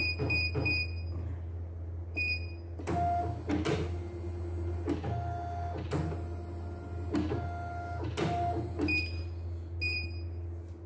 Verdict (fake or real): real